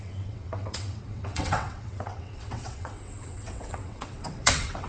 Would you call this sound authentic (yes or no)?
no